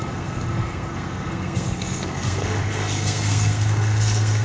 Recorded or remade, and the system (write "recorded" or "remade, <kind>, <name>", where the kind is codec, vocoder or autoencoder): remade, codec, SNAC